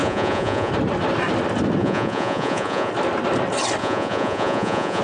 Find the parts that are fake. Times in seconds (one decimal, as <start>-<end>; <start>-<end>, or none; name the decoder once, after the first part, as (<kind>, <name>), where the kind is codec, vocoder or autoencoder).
0.0-0.7 (vocoder, Vocos); 1.8-2.9; 3.8-5.0